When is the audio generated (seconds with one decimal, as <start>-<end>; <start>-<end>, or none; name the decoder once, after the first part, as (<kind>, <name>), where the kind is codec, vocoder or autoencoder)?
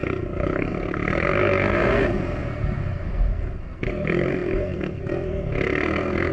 0.0-6.3 (codec, SNAC)